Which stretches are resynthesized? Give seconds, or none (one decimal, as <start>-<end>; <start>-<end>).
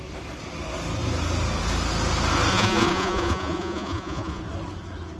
2.5-4.4